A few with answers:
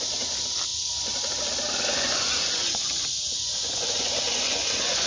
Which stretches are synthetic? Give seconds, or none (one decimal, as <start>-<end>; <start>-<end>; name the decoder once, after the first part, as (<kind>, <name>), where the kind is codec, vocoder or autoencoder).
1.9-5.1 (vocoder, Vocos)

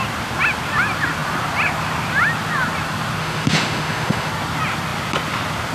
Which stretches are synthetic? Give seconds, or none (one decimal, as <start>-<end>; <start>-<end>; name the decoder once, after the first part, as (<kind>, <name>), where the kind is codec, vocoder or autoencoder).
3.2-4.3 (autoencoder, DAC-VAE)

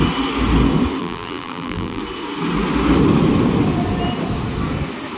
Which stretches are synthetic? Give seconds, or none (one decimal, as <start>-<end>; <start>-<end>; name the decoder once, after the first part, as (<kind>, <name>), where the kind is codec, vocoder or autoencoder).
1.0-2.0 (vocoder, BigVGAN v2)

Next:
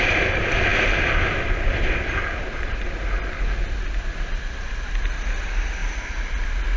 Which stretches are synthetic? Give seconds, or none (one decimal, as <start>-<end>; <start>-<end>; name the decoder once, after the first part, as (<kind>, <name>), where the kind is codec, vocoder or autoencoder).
none